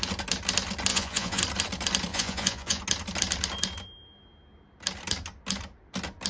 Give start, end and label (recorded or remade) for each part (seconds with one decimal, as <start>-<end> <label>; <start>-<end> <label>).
0.0-0.9 recorded; 0.9-1.4 remade; 1.4-2.1 recorded; 2.1-2.8 remade; 2.8-6.3 recorded